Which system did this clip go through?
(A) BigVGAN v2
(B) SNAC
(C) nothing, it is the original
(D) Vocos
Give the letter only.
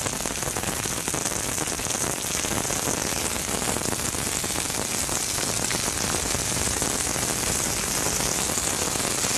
C